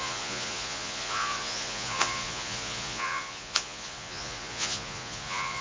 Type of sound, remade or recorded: remade